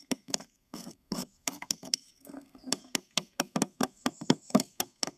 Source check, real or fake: fake